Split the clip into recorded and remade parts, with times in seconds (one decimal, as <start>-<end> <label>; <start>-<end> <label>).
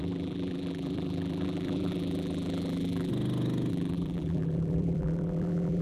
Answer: 0.0-3.1 remade; 3.1-3.7 recorded; 3.7-5.8 remade